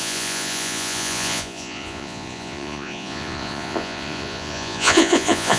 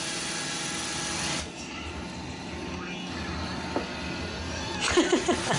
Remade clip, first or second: first